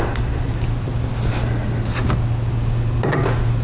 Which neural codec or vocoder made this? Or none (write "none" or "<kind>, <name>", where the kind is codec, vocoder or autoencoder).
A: none